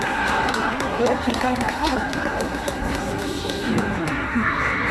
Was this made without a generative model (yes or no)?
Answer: no